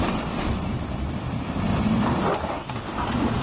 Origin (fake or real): fake